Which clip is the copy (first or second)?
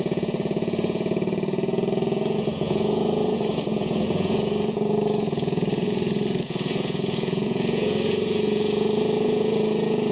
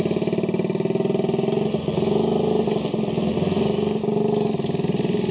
first